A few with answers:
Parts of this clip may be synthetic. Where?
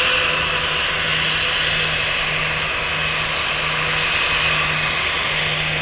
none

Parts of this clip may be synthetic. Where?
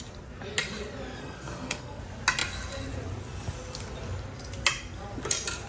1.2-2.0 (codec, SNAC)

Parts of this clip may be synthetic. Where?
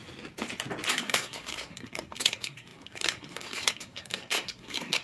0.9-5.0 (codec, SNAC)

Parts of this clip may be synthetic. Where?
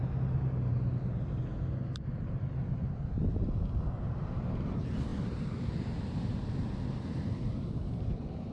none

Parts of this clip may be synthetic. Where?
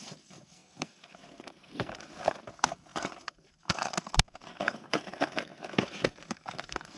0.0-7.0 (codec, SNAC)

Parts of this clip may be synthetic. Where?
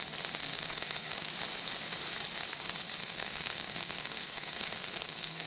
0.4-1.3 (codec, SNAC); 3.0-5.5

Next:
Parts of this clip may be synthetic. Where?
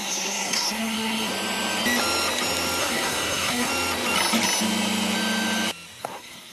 0.0-1.3 (codec, SNAC); 2.8-3.7; 6.0-6.5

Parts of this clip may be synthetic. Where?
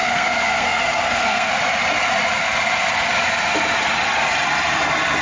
0.0-1.5 (codec, SNAC)